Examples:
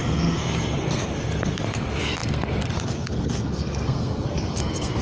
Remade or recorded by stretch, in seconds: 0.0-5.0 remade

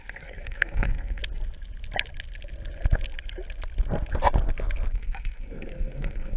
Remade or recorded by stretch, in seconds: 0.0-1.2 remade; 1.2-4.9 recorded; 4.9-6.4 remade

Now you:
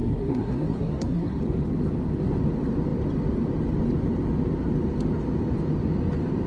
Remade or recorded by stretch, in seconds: 0.0-1.4 remade; 1.4-6.5 recorded

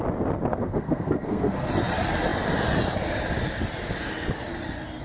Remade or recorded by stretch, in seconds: 0.0-0.5 recorded; 0.5-1.7 remade; 1.7-5.0 recorded

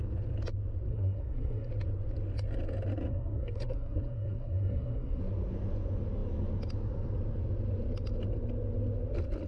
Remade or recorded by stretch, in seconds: 0.0-0.9 recorded; 0.9-1.7 remade; 1.7-3.1 recorded; 3.1-5.2 remade; 5.2-9.5 recorded

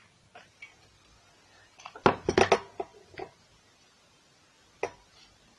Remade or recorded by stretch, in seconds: 0.0-5.6 recorded

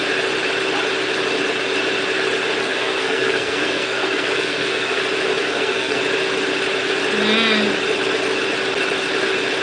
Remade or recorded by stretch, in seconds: 0.0-2.6 recorded; 2.6-5.0 remade; 5.0-5.4 recorded; 5.4-6.0 remade; 6.0-9.6 recorded

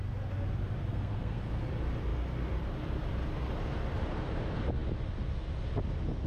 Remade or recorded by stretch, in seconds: 0.0-0.9 recorded; 0.9-1.4 remade; 1.4-6.3 recorded